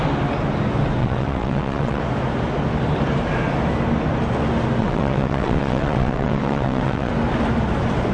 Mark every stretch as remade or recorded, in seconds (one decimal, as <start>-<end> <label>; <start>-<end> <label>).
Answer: 0.0-1.0 recorded; 1.0-2.0 remade; 2.0-4.8 recorded; 4.8-7.1 remade; 7.1-8.1 recorded